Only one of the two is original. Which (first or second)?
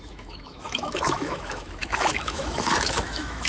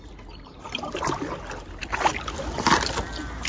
second